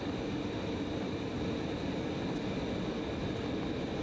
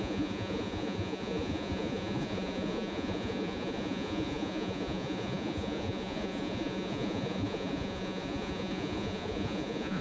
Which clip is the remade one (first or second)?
second